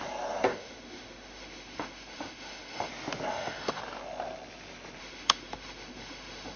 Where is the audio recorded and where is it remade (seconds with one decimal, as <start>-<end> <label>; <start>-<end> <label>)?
0.0-0.5 recorded; 0.5-2.9 remade; 2.9-3.3 recorded; 3.3-3.8 remade; 3.8-5.0 recorded; 5.0-6.6 remade